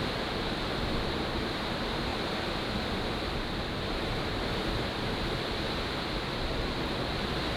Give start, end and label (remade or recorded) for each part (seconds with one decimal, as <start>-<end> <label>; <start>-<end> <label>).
0.0-2.1 recorded; 2.1-5.5 remade; 5.5-7.6 recorded